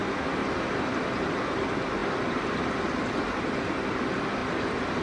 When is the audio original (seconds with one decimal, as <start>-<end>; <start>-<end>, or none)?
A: 0.0-0.4; 1.4-2.0; 3.2-4.4